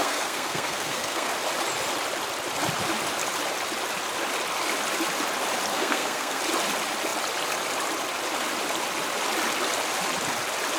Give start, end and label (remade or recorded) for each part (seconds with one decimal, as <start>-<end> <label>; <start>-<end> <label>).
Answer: 0.0-1.3 remade; 1.3-5.7 recorded; 5.7-6.4 remade; 6.4-10.8 recorded